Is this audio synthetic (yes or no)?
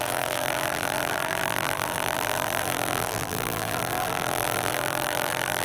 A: yes